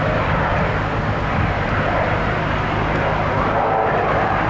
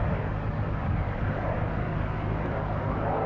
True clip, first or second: first